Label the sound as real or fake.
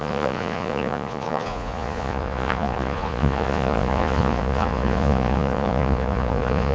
fake